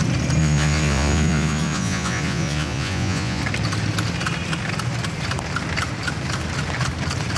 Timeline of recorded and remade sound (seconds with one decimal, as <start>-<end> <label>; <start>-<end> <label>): 0.0-0.4 recorded; 0.4-3.4 remade; 3.4-7.4 recorded